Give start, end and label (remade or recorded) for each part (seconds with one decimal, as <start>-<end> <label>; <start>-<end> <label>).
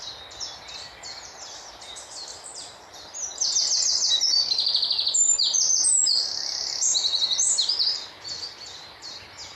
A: 0.0-9.6 recorded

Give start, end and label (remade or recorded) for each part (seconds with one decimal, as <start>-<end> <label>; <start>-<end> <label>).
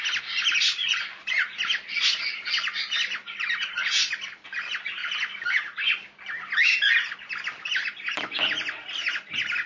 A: 0.0-0.8 recorded; 0.8-1.3 remade; 1.3-9.7 recorded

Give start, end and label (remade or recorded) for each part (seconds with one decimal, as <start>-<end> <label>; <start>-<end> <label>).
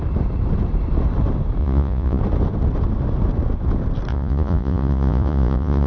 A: 0.0-1.6 recorded; 1.6-2.2 remade; 2.2-4.1 recorded; 4.1-5.9 remade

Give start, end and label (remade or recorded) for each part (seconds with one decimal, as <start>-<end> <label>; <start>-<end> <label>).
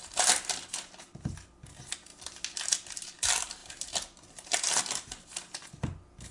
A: 0.0-6.3 recorded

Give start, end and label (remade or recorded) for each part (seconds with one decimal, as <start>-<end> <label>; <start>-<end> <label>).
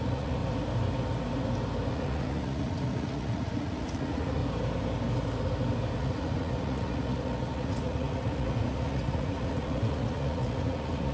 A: 0.0-0.4 remade; 0.4-1.9 recorded; 1.9-4.4 remade; 4.4-6.0 recorded; 6.0-11.1 remade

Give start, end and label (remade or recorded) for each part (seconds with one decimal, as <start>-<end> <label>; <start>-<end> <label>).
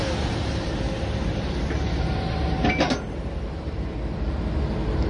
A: 0.0-5.1 recorded